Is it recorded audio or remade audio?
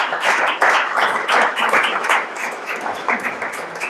remade